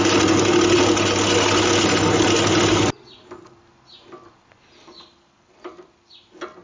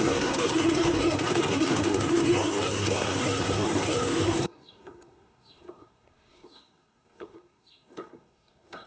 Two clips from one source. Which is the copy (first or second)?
second